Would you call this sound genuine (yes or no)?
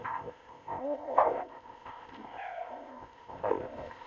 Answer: no